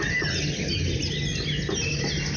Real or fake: real